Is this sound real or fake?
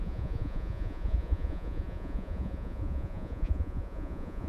fake